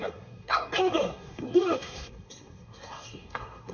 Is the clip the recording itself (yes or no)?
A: no